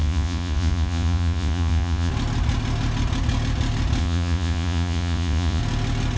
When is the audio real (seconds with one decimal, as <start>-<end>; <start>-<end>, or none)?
2.1-4.0; 5.6-6.2